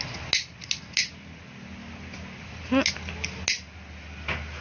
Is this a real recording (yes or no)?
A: yes